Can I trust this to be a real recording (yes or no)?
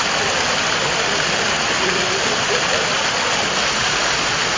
yes